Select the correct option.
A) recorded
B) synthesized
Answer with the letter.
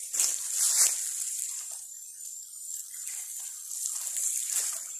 A